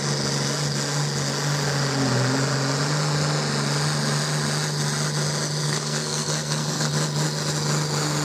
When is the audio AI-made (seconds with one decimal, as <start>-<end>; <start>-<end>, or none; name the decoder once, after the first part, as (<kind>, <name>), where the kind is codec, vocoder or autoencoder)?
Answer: 5.6-6.9 (codec, SNAC)

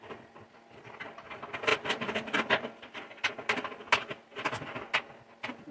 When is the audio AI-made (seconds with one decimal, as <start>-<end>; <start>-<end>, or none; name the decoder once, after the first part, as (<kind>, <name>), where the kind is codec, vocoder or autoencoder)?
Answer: none

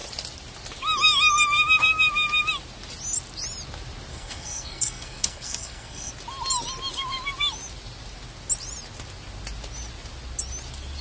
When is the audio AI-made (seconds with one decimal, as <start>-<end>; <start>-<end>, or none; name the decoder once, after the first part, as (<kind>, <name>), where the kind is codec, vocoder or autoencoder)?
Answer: 4.1-6.1 (codec, SNAC)

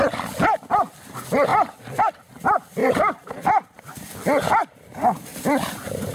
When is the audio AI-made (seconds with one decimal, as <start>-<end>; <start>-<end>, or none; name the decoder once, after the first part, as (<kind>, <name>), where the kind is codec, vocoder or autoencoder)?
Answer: 2.8-4.1 (vocoder, BigVGAN v2)

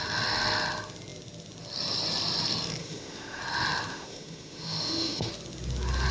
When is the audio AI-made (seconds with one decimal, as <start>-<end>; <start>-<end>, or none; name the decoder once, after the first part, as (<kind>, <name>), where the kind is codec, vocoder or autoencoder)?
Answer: 2.8-3.4 (autoencoder, DAC-VAE); 3.9-5.3

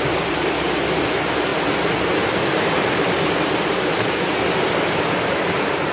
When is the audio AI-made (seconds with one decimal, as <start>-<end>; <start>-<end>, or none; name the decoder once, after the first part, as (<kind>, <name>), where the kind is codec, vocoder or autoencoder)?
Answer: none